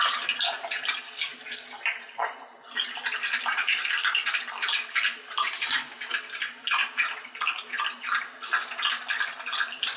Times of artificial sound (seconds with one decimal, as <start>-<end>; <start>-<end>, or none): none